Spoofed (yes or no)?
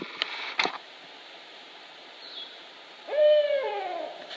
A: yes